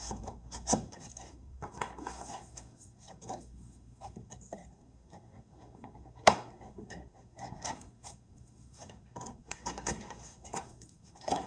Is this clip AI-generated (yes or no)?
yes